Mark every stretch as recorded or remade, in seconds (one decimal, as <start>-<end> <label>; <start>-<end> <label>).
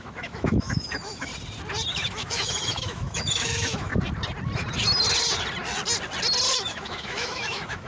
0.0-1.3 remade; 1.3-1.9 recorded; 1.9-3.9 remade; 3.9-6.5 recorded; 6.5-7.9 remade